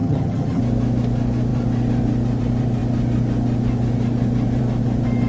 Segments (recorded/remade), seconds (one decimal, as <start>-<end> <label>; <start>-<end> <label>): 0.0-0.6 remade; 0.6-5.3 recorded